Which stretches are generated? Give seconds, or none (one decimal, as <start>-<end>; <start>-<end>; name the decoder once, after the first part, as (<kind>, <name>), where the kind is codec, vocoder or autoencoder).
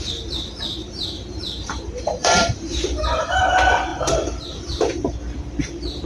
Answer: 0.8-3.4 (vocoder, BigVGAN v2); 3.9-5.1